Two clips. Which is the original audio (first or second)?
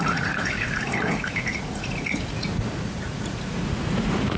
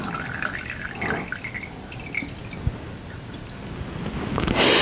second